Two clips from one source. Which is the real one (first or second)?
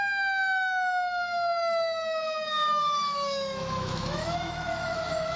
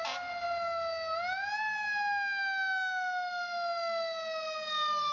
second